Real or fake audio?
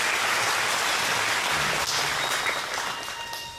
real